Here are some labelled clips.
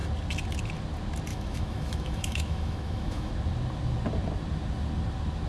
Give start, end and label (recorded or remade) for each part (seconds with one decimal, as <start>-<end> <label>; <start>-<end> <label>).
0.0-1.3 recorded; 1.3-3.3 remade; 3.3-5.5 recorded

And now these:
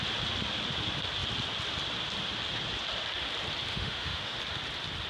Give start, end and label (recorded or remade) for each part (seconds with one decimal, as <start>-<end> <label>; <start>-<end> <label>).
0.0-3.7 recorded; 3.7-4.4 remade; 4.4-5.1 recorded

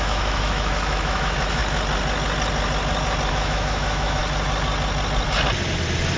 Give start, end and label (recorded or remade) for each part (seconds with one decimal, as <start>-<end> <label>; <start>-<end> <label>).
0.0-1.6 remade; 1.6-3.3 recorded; 3.3-4.2 remade; 4.2-6.2 recorded

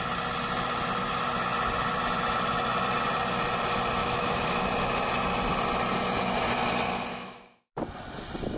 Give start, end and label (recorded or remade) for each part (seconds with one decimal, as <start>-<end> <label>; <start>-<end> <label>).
0.0-4.0 recorded; 4.0-4.7 remade; 4.7-7.1 recorded; 7.1-7.8 remade; 7.8-8.6 recorded